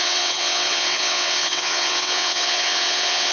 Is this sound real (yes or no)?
no